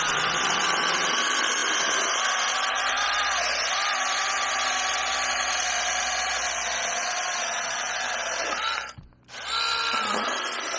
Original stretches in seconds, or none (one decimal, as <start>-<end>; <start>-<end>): 0.0-10.8